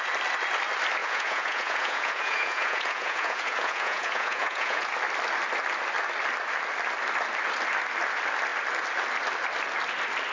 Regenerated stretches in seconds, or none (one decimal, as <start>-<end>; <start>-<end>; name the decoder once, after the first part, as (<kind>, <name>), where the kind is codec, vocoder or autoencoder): 1.0-4.9 (vocoder, Vocos)